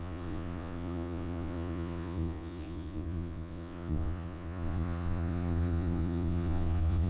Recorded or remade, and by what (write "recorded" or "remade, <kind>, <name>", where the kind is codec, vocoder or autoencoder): remade, vocoder, Vocos